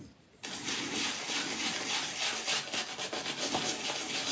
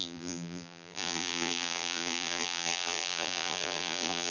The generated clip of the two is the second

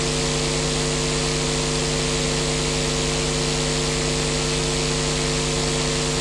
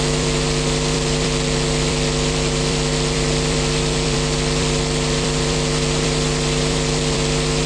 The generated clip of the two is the second